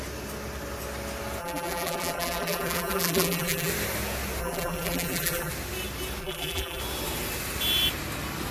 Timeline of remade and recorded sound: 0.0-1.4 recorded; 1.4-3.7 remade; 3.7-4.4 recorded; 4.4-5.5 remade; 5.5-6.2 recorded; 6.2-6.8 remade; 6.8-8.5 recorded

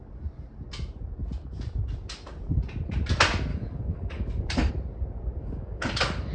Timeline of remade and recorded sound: 0.0-3.5 recorded; 3.5-4.7 remade; 4.7-5.4 recorded; 5.4-6.3 remade

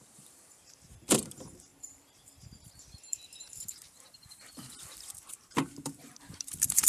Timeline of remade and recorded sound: 0.0-6.9 remade

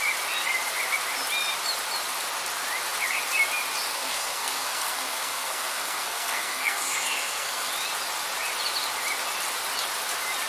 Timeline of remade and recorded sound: 0.0-3.9 recorded; 3.9-7.7 remade; 7.7-10.5 recorded